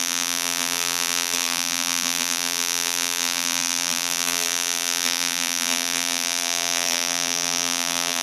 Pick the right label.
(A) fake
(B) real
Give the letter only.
A